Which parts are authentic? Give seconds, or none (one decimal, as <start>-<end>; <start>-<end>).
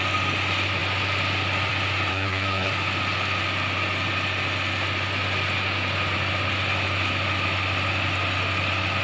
0.0-2.1; 2.7-9.0